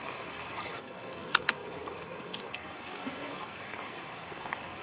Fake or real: fake